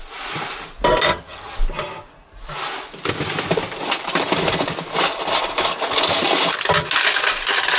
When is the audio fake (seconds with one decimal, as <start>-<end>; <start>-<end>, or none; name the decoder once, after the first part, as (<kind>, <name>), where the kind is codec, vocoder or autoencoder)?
1.1-1.6 (vocoder, HiFi-GAN)